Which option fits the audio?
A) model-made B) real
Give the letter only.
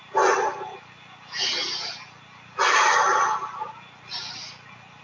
B